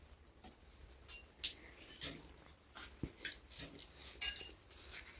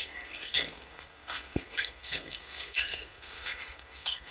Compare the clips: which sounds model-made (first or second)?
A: second